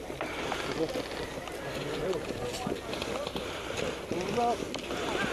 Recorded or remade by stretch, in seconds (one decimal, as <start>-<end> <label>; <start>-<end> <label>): 0.0-5.3 recorded